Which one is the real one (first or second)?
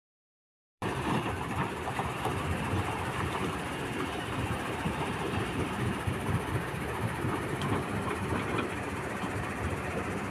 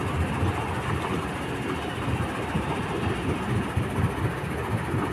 second